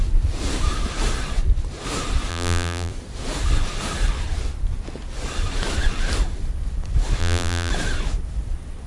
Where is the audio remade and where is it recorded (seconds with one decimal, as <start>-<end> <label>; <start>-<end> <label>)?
0.0-2.3 recorded; 2.3-2.9 remade; 2.9-7.2 recorded; 7.2-7.7 remade; 7.7-8.9 recorded